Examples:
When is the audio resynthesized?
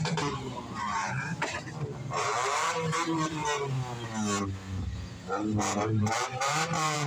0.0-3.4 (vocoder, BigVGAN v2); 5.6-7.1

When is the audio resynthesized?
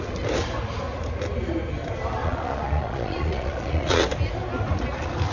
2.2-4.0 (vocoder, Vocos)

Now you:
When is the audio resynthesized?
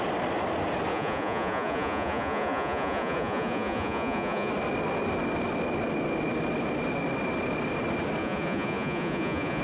0.9-4.5 (vocoder, Vocos); 8.2-9.6